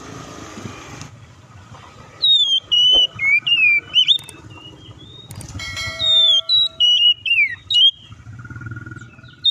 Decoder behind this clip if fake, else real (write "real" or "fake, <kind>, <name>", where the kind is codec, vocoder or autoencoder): fake, vocoder, BigVGAN v2